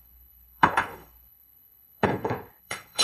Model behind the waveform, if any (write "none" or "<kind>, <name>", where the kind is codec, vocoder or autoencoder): codec, HILCodec